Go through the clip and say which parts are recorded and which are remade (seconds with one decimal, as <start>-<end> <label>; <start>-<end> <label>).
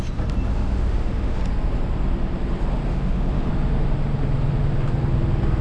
0.0-0.5 recorded; 0.5-1.4 remade; 1.4-2.9 recorded; 2.9-3.5 remade; 3.5-5.6 recorded